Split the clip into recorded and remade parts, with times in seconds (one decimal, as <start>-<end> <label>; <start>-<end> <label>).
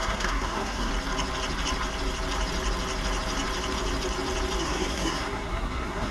0.0-0.9 remade; 0.9-4.6 recorded; 4.6-6.1 remade